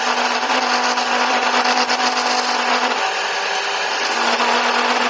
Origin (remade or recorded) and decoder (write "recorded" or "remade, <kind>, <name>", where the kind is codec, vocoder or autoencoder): recorded